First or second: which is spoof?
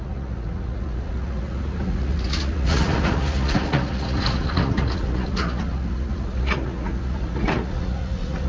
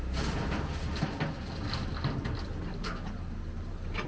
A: first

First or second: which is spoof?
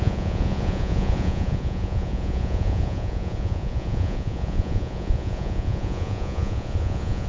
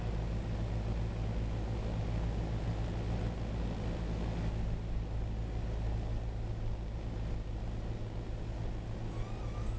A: first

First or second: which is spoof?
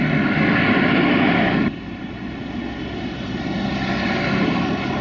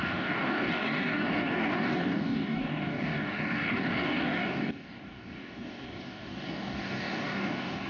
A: second